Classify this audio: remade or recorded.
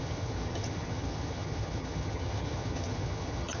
remade